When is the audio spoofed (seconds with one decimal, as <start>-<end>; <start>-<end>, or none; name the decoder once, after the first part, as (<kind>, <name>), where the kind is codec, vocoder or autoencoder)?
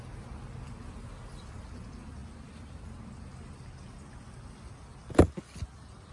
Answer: none